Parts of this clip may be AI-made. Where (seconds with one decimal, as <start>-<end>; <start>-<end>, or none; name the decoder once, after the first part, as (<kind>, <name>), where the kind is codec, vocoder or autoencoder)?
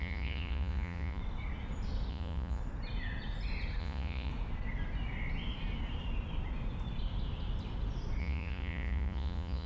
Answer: 0.0-1.2 (vocoder, Vocos); 2.1-2.6; 3.8-4.3; 8.2-9.7